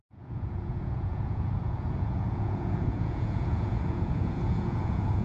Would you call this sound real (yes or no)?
no